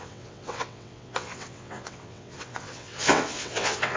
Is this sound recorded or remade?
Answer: remade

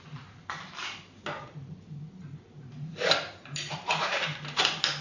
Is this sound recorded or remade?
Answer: recorded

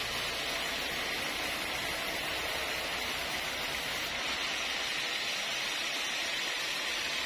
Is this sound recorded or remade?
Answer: recorded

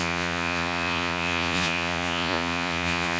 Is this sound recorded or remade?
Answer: remade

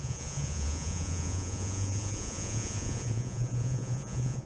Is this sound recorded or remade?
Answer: remade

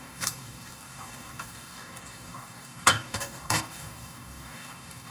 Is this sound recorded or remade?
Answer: remade